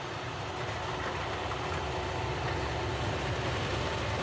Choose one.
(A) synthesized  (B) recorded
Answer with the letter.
B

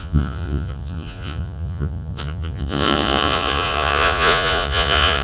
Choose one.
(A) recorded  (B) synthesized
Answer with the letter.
B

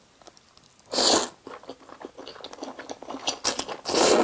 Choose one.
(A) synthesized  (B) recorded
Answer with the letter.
B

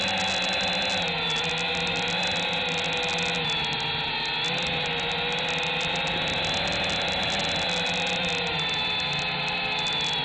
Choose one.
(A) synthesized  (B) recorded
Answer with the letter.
B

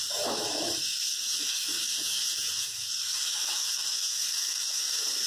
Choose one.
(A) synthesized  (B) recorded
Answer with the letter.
A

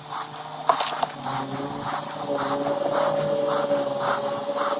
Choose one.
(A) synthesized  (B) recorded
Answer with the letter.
B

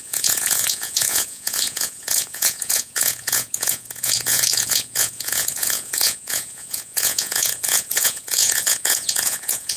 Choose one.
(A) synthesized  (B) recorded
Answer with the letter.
A